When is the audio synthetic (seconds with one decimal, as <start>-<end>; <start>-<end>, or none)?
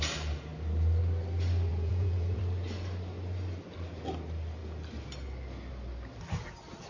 1.7-2.4